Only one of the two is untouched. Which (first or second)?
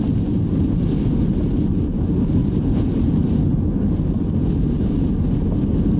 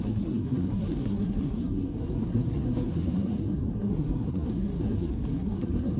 first